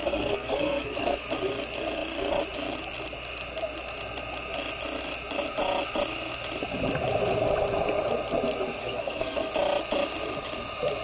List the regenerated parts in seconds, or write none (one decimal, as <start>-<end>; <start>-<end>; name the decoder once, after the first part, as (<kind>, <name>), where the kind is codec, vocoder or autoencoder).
0.0-1.2 (codec, SNAC); 8.8-9.5